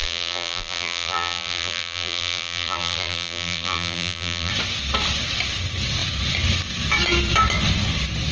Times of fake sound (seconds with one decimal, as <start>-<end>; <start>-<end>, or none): 0.0-4.5